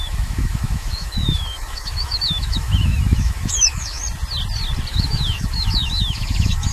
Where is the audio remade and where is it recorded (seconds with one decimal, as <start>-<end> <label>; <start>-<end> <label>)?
0.0-4.0 remade; 4.0-4.9 recorded; 4.9-6.7 remade